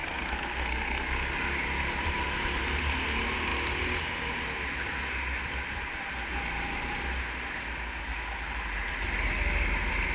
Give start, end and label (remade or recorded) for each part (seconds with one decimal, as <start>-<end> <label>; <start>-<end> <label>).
0.0-1.3 remade; 1.3-10.1 recorded